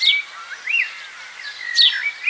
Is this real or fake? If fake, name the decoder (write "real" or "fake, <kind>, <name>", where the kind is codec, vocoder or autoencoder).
real